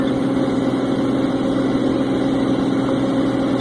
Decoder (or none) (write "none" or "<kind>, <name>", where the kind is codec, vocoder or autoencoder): none